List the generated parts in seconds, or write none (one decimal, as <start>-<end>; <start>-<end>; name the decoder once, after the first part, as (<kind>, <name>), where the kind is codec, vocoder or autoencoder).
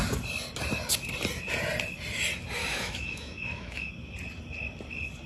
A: 2.6-3.9 (autoencoder, DAC-VAE)